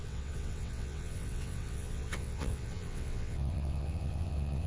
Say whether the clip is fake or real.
fake